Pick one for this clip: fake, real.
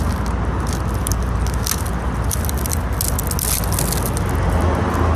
real